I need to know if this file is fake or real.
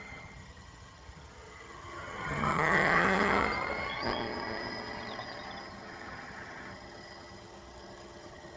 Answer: fake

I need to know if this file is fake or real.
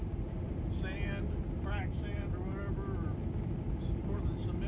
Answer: real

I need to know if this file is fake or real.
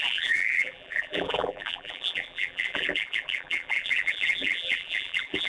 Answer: fake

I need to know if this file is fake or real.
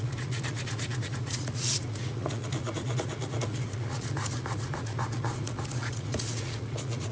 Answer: fake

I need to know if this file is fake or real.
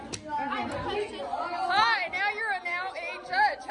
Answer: real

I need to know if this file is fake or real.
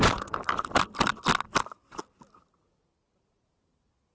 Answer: real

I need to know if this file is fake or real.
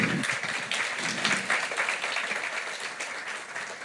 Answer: real